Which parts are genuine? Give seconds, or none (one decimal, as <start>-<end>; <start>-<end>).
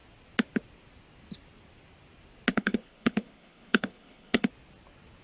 0.0-2.5; 4.5-5.2